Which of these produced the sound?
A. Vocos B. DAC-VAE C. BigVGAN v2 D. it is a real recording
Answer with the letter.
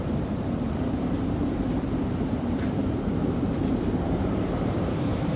C